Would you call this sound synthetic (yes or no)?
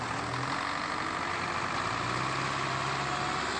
no